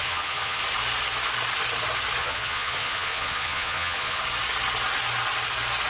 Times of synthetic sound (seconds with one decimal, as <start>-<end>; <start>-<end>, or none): 0.0-0.6; 2.2-4.2